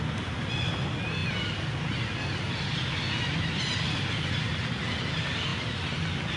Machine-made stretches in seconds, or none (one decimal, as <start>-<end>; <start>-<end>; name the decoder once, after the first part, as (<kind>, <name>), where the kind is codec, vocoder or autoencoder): none